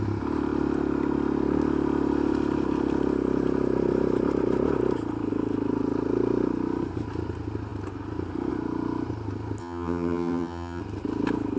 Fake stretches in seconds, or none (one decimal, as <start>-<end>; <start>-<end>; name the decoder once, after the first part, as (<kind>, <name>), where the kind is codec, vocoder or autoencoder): 9.6-10.8 (vocoder, HiFi-GAN)